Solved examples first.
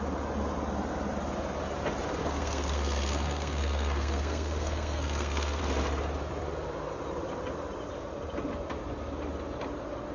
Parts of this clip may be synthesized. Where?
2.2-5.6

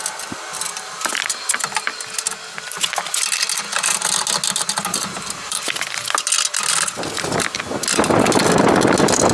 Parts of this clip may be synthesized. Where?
0.5-1.1; 4.9-5.7

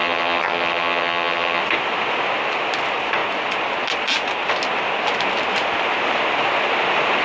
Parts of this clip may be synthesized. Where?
0.0-1.6

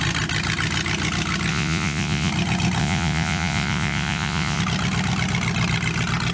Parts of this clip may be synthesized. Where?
1.5-2.3; 2.8-4.6

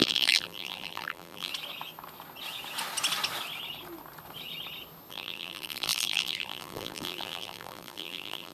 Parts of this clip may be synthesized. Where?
0.0-1.5; 5.1-8.5